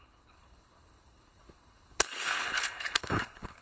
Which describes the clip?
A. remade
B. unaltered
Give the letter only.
A